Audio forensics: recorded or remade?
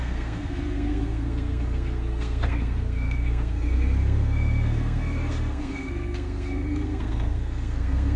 remade